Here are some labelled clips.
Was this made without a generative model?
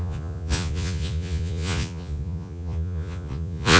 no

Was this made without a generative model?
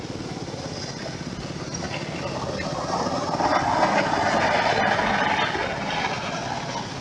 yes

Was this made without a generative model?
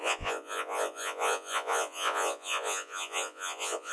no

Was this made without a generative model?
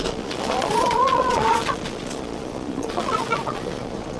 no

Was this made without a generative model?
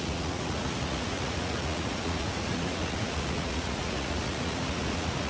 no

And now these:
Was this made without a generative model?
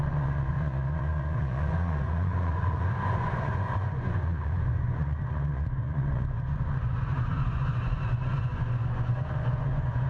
no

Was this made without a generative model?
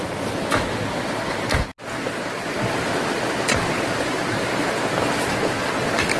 yes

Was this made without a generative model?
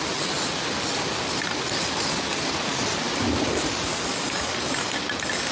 yes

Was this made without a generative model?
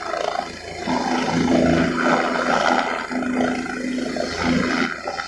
yes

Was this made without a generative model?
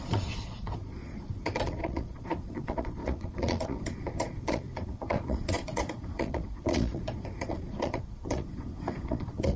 no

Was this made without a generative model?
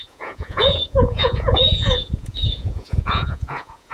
no